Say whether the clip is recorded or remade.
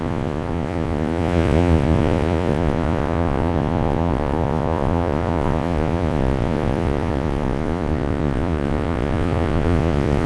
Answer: remade